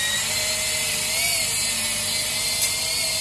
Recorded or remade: recorded